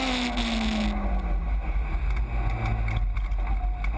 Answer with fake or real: real